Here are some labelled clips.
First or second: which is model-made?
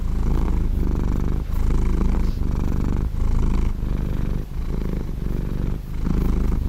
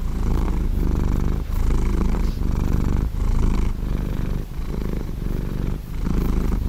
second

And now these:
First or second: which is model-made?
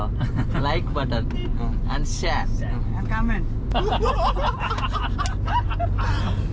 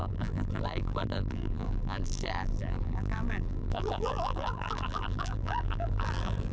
second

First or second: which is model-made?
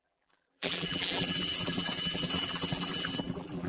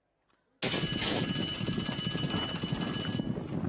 first